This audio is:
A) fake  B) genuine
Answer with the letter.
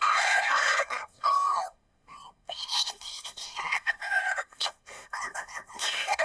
A